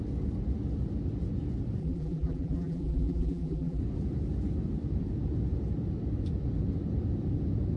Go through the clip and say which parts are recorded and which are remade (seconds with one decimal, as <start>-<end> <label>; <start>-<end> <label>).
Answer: 0.0-1.8 recorded; 1.8-3.8 remade; 3.8-7.8 recorded